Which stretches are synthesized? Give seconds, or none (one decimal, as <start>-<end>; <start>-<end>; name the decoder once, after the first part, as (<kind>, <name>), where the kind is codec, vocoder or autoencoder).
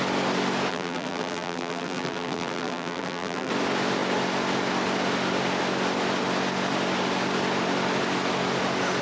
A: 0.7-3.5 (vocoder, BigVGAN v2)